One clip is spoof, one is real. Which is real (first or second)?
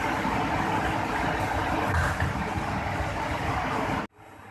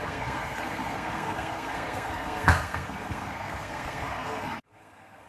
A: first